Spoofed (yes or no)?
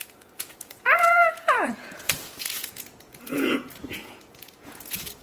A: yes